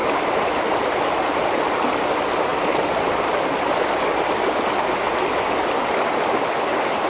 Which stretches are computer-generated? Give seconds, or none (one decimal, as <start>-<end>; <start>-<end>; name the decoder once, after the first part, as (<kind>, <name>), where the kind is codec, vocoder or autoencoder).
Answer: 0.0-0.8 (vocoder, BigVGAN v2)